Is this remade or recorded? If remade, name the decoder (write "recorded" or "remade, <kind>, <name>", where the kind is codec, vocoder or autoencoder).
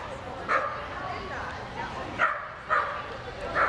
recorded